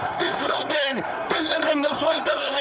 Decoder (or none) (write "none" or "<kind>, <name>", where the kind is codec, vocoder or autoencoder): codec, SNAC